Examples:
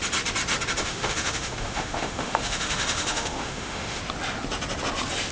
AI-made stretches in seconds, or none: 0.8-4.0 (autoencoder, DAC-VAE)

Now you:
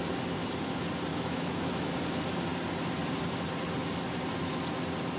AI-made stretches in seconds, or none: 1.1-1.9 (autoencoder, DAC-VAE)

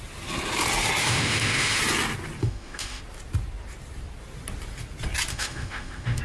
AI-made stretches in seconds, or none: 1.0-1.8 (autoencoder, DAC-VAE); 2.4-3.0; 5.3-6.2

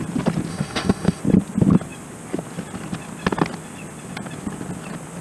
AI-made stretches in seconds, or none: 0.5-1.2 (autoencoder, DAC-VAE)

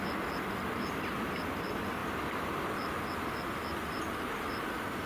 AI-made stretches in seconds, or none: none